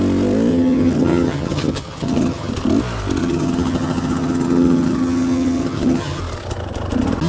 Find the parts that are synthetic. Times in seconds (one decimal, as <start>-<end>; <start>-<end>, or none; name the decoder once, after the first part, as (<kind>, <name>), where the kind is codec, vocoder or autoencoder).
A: 0.5-2.5 (vocoder, HiFi-GAN); 3.2-6.2